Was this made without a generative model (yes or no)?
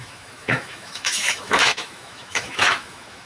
no